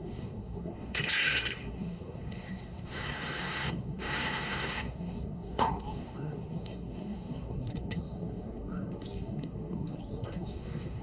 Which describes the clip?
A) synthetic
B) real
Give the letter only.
A